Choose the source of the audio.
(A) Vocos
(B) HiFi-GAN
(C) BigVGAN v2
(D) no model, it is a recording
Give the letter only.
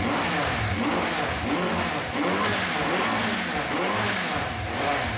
D